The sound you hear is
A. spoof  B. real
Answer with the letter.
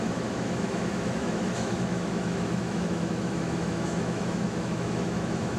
A